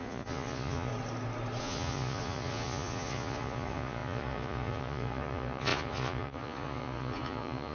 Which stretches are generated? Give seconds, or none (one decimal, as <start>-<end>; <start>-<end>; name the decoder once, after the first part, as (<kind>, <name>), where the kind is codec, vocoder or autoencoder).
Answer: 0.0-0.9 (vocoder, Vocos); 1.6-7.7